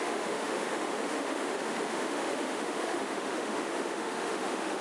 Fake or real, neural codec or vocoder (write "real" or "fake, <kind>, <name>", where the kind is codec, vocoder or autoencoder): fake, autoencoder, DAC-VAE